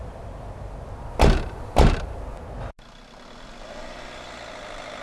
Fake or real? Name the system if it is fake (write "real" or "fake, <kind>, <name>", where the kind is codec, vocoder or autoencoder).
real